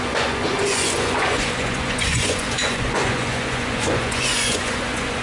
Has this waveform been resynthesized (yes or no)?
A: yes